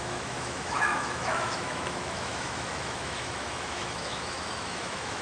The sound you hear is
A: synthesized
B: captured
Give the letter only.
A